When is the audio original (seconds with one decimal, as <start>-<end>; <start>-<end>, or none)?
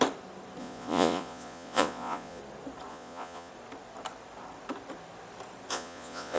0.0-0.6; 2.4-2.9; 3.5-5.7